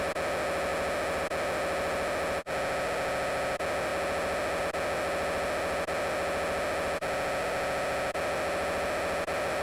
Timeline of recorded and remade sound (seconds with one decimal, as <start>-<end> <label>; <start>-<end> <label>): 0.0-9.6 recorded